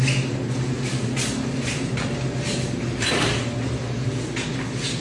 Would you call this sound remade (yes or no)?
no